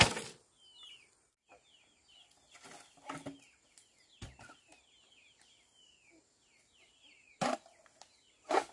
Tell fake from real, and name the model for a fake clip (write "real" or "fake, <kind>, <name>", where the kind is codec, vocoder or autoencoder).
real